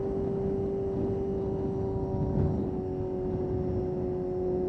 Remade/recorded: recorded